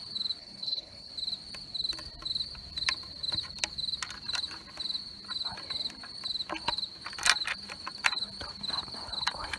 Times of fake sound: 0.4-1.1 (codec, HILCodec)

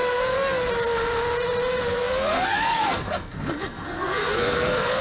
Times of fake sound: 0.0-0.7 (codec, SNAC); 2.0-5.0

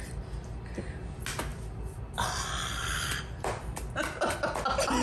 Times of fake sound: 1.5-4.5 (vocoder, BigVGAN v2)

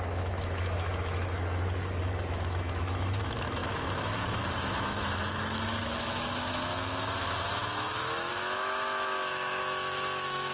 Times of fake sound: 0.0-1.4 (autoencoder, DAC-VAE); 2.0-10.5

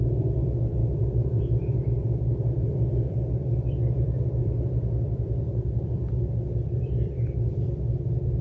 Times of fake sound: 0.0-8.4 (vocoder, BigVGAN v2)

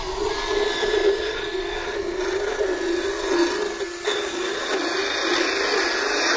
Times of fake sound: none

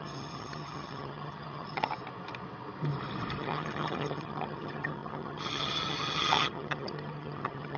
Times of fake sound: 0.0-1.9 (vocoder, HiFi-GAN); 3.4-7.8